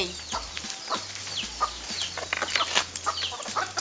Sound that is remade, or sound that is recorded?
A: recorded